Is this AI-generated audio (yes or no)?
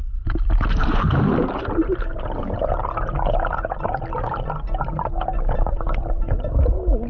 no